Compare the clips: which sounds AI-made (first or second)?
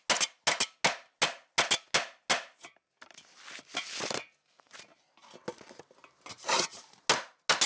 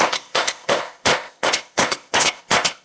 second